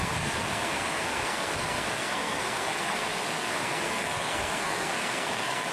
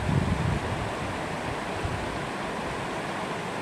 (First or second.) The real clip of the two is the second